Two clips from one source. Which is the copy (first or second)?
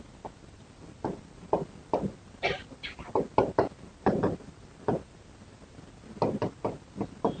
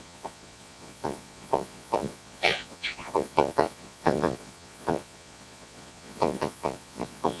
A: second